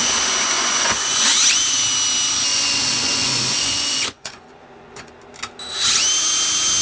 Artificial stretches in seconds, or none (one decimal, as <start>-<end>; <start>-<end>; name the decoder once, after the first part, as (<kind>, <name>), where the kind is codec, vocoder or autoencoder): 0.0-1.2 (vocoder, Vocos); 2.5-5.1